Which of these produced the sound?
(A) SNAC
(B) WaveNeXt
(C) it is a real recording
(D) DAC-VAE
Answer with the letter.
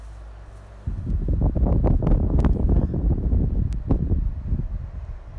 C